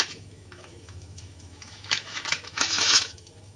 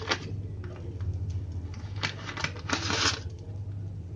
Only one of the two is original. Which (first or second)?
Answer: second